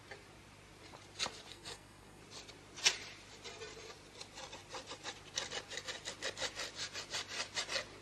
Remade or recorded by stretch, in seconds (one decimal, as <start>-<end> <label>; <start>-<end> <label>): 0.0-1.5 recorded; 1.5-2.2 remade; 2.2-8.0 recorded